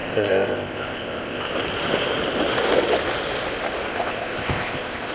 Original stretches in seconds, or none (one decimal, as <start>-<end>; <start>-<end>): 1.5-3.9